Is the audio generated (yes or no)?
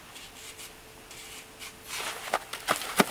no